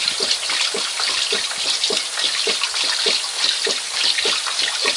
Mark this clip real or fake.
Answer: real